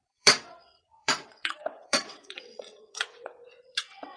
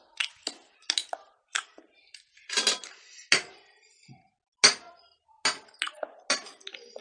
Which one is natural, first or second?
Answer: second